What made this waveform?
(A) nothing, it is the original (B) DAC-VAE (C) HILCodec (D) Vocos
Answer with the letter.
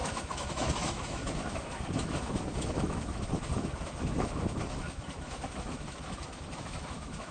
B